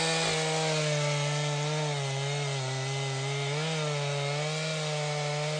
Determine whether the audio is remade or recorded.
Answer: recorded